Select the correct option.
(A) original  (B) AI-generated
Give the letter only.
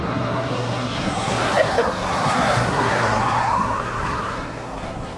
B